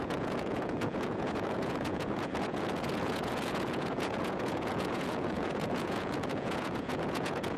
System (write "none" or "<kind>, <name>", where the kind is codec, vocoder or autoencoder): vocoder, Vocos